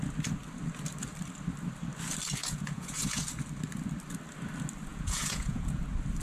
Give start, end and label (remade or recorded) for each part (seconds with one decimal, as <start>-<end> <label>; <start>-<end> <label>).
0.0-2.4 recorded; 2.4-3.2 remade; 3.2-4.9 recorded; 4.9-5.8 remade; 5.8-6.2 recorded